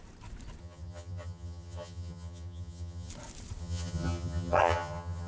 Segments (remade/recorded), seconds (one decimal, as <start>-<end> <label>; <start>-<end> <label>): 0.0-0.6 recorded; 0.6-3.1 remade; 3.1-3.6 recorded; 3.6-5.3 remade